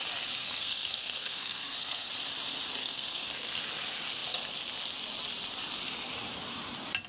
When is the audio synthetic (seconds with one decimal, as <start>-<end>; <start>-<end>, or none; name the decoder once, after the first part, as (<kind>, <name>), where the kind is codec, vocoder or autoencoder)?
0.4-2.1 (codec, SNAC); 2.8-3.6